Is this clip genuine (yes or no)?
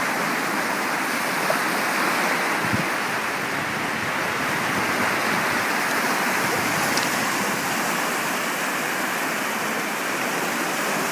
yes